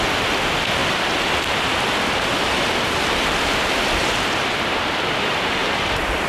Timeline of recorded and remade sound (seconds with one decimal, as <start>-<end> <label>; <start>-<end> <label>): 0.0-5.6 recorded; 5.6-6.3 remade